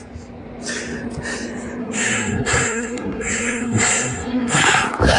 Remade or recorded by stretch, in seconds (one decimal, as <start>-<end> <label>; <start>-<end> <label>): 0.0-1.8 recorded; 1.8-4.6 remade; 4.6-5.2 recorded